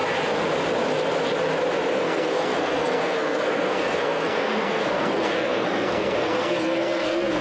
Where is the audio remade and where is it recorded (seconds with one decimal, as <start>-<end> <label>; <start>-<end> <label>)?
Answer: 0.0-1.9 recorded; 1.9-7.4 remade

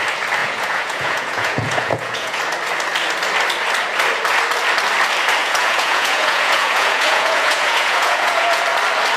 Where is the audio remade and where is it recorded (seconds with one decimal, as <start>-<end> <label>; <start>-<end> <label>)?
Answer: 0.0-0.4 recorded; 0.4-2.4 remade; 2.4-5.4 recorded; 5.4-8.6 remade; 8.6-9.2 recorded